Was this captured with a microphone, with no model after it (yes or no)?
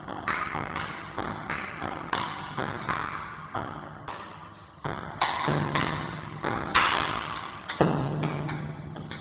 no